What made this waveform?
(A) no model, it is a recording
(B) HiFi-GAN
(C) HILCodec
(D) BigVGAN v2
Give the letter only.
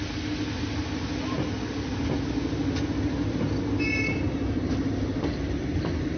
A